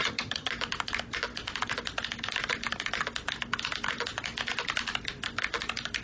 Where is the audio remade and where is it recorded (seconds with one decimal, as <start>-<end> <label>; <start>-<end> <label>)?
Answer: 0.0-0.5 remade; 0.5-6.0 recorded